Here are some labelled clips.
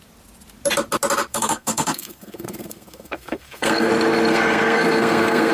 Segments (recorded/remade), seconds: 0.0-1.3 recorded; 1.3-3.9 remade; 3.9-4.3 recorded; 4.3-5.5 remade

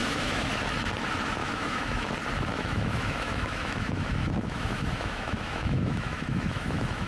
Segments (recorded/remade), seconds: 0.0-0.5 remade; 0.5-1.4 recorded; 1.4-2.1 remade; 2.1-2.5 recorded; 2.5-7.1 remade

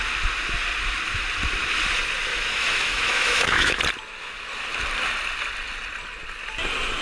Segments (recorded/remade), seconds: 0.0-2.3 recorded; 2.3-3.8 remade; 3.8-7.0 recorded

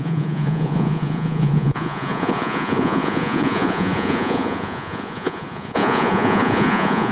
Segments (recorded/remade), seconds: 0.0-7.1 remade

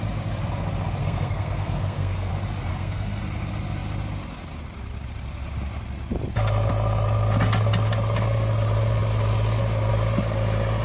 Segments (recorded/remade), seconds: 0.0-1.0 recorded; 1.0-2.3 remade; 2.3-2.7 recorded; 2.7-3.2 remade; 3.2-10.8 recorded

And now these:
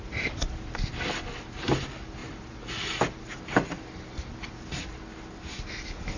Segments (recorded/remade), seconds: 0.0-6.2 recorded